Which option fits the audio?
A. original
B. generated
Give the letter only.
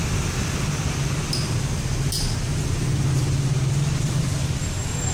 A